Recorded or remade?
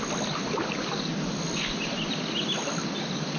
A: recorded